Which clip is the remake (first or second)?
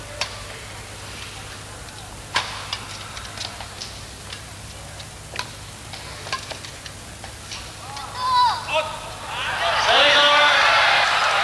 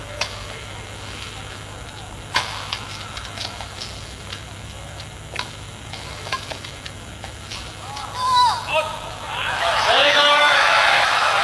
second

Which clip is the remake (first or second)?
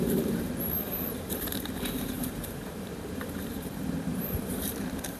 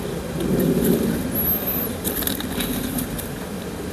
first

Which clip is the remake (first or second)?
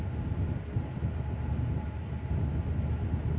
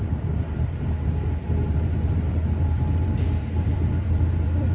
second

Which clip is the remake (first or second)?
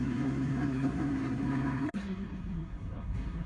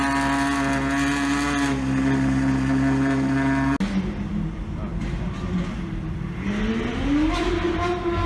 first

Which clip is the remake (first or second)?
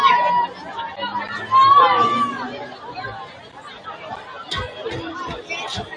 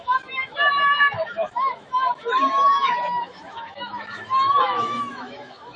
second